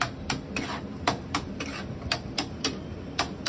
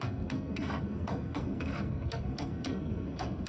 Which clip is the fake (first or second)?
second